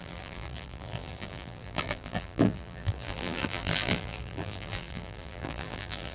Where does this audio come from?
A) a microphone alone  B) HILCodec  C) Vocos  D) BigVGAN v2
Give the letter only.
D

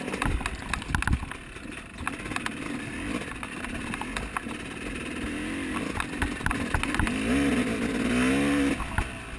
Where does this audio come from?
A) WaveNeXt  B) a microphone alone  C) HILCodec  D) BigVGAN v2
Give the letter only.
B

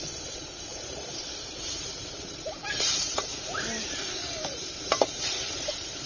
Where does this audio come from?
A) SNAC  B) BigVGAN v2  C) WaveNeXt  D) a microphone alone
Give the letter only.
B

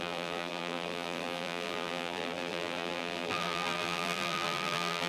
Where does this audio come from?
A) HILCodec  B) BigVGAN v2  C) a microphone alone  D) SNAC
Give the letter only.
B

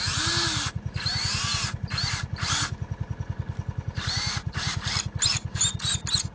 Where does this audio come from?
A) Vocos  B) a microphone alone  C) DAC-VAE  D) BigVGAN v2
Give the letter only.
B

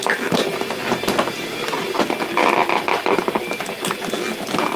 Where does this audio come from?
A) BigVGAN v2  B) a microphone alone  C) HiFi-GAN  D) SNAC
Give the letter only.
B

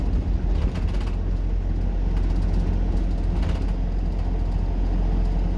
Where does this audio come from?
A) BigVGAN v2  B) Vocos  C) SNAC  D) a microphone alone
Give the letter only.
D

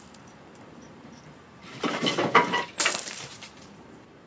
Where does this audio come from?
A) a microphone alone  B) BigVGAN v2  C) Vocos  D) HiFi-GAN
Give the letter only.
B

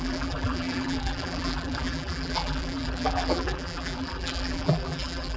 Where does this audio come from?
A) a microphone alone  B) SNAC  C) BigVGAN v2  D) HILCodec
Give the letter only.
C